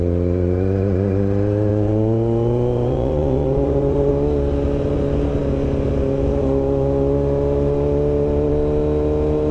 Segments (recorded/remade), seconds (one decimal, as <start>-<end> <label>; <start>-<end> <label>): 0.0-1.7 recorded; 1.7-4.1 remade; 4.1-9.5 recorded